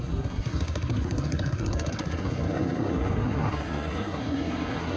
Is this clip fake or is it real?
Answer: fake